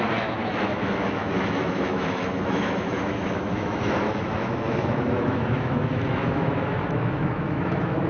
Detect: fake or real fake